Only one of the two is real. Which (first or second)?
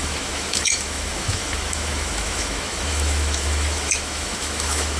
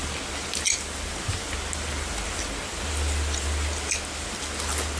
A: second